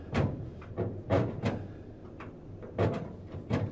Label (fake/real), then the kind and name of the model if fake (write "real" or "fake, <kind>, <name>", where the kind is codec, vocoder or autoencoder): real